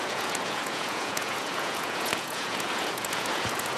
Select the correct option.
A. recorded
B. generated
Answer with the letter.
B